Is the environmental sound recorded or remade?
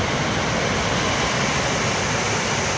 recorded